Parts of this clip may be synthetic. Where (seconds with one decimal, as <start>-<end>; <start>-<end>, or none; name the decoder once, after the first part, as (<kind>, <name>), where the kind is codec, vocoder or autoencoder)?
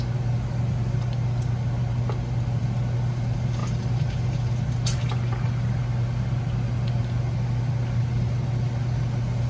none